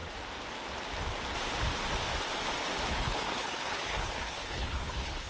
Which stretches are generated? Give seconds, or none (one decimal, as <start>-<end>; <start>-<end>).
2.9-5.3